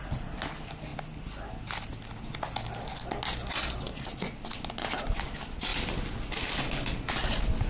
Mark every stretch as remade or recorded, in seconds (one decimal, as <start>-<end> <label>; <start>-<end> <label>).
0.0-7.7 recorded